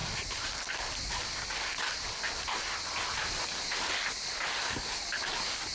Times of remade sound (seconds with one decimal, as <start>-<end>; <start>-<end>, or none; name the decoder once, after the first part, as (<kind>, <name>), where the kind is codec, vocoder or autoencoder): 4.5-5.0 (codec, SNAC)